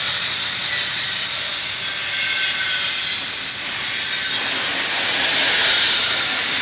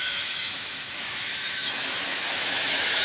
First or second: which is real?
first